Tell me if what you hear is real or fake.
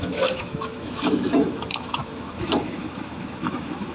fake